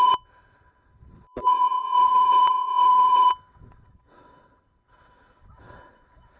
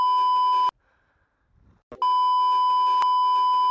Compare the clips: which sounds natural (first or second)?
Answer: second